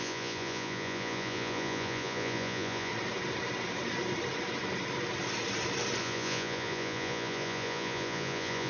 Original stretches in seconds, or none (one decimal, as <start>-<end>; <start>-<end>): 2.9-6.0